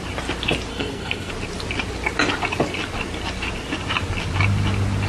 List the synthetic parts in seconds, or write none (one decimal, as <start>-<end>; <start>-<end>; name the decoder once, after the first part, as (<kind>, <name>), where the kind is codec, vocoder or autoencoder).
0.7-1.3 (codec, SNAC)